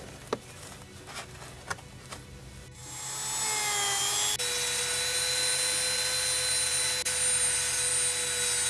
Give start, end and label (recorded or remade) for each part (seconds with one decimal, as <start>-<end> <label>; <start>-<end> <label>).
0.0-8.7 recorded